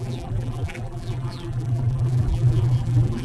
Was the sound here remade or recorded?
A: remade